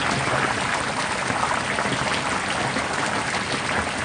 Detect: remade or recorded recorded